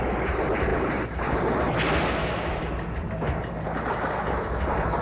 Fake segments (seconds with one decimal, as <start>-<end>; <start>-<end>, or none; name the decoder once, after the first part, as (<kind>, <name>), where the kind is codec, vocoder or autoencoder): 2.2-3.0 (vocoder, BigVGAN v2)